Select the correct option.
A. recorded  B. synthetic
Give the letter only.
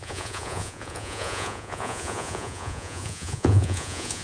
B